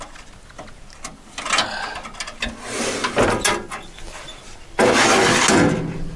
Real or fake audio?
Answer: real